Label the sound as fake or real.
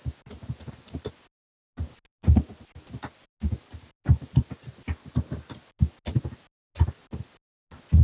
real